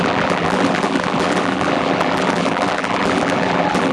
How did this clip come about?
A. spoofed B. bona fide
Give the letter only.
A